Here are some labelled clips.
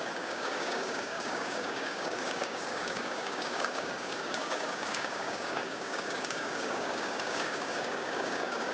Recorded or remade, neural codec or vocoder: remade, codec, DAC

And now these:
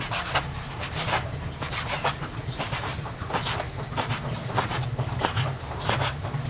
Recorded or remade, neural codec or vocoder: remade, vocoder, BigVGAN v2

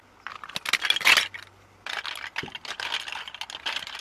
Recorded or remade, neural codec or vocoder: recorded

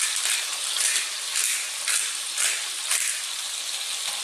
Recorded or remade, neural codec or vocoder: recorded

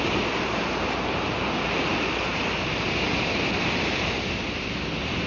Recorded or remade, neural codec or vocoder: recorded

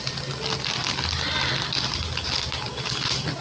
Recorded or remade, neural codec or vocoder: recorded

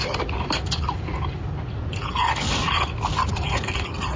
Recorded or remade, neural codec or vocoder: recorded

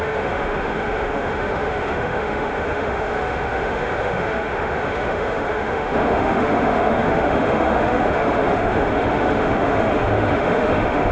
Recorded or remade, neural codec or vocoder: remade, autoencoder, DAC-VAE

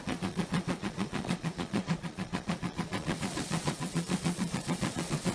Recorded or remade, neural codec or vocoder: remade, vocoder, Vocos